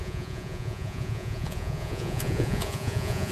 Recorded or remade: remade